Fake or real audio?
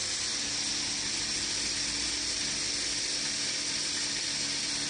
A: real